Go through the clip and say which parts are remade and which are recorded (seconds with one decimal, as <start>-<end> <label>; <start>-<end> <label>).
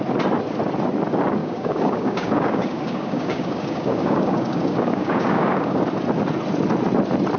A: 0.0-1.4 recorded; 1.4-5.8 remade; 5.8-7.4 recorded